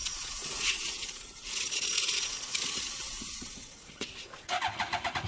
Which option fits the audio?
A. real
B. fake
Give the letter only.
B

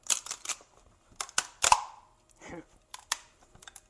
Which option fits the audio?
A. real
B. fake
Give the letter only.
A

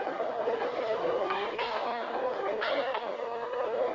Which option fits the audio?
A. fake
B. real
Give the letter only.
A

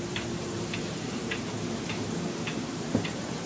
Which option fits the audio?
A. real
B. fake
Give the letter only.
B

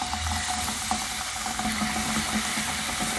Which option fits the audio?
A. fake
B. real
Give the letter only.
B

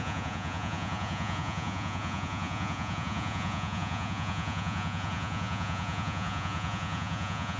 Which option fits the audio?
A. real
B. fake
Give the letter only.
B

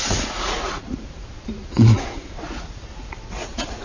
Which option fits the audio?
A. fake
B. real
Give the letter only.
A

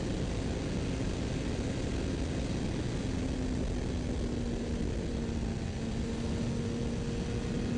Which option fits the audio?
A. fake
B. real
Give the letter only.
B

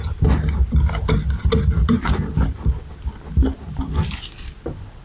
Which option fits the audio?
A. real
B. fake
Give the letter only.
A